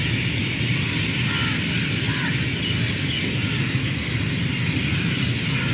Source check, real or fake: real